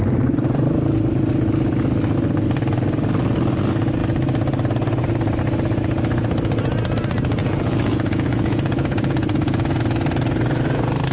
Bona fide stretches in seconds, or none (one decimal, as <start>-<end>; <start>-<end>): 0.0-7.4; 9.8-11.1